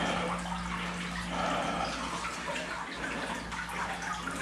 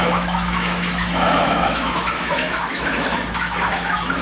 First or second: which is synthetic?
second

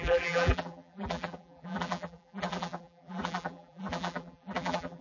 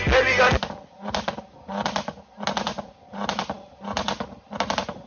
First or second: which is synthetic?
first